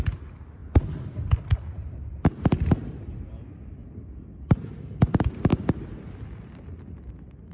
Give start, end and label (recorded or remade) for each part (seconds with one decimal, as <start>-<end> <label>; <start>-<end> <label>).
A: 0.0-7.5 recorded